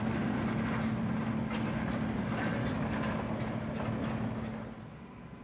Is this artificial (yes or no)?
no